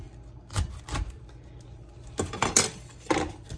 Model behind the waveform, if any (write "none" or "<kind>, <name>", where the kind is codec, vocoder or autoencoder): none